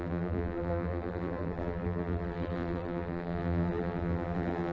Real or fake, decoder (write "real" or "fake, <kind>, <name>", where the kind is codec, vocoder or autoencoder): fake, vocoder, BigVGAN v2